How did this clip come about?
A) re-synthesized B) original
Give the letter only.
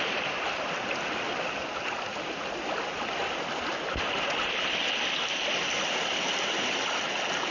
B